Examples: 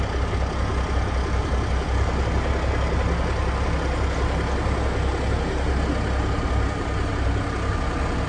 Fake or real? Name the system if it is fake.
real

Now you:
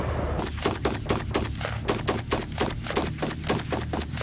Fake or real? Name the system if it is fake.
real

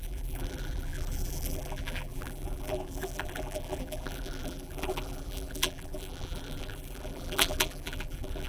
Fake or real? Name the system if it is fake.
fake, vocoder, BigVGAN v2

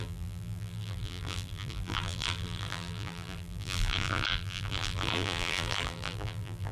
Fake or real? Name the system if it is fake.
fake, vocoder, BigVGAN v2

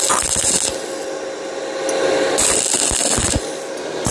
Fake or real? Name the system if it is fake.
real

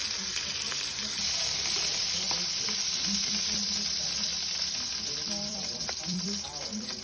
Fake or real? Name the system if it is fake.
fake, vocoder, BigVGAN v2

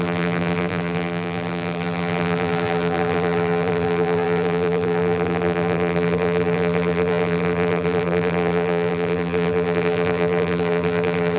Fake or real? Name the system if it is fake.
fake, vocoder, BigVGAN v2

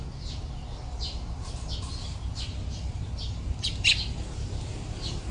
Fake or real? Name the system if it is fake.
real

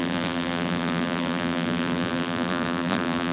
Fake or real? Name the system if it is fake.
fake, vocoder, BigVGAN v2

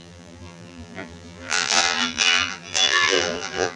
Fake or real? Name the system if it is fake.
fake, vocoder, BigVGAN v2